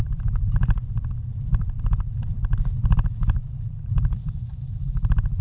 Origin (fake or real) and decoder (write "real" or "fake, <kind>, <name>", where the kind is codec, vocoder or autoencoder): fake, vocoder, BigVGAN v2